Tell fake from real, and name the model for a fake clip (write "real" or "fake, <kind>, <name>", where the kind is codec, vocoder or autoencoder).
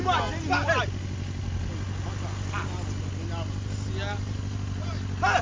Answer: real